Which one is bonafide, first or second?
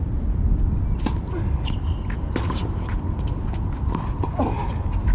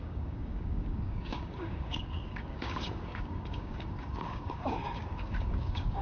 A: first